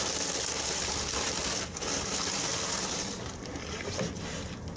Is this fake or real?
real